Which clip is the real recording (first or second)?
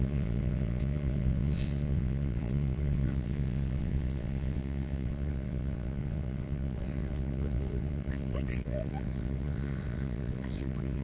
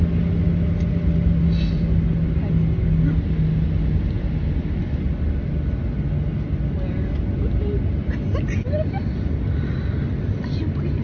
second